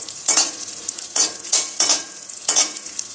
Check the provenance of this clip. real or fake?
fake